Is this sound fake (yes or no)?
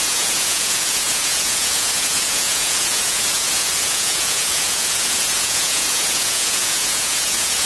yes